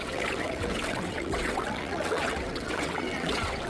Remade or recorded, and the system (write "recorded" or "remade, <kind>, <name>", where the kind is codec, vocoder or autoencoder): remade, vocoder, WaveNeXt